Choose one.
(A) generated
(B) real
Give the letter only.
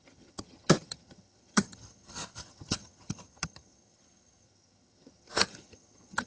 A